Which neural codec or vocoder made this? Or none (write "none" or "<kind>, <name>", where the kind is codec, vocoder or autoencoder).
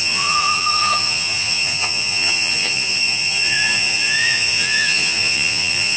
vocoder, Vocos